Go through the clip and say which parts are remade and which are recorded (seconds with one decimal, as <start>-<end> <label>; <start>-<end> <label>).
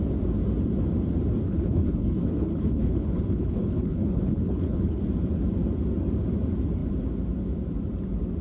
0.0-1.4 recorded; 1.4-5.0 remade; 5.0-8.4 recorded